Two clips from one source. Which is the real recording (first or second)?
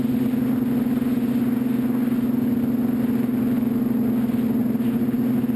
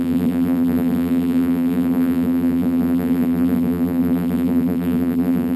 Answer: first